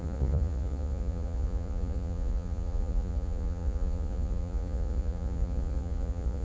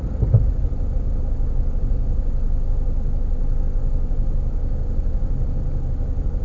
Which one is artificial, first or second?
first